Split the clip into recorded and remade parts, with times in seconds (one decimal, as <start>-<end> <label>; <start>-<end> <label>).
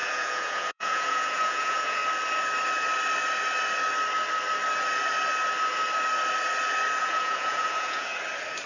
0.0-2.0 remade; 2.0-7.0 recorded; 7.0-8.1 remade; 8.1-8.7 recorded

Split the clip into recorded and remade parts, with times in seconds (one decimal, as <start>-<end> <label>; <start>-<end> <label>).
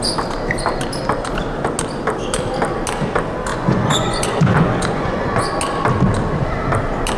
0.0-3.5 recorded; 3.5-5.5 remade; 5.5-7.2 recorded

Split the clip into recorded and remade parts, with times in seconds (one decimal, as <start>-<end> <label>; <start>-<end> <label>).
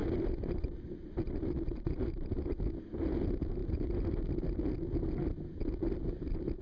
0.0-2.4 remade; 2.4-3.6 recorded; 3.6-4.2 remade; 4.2-6.6 recorded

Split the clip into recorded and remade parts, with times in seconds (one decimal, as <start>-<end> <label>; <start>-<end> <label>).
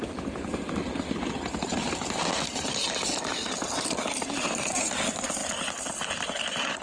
0.0-6.8 recorded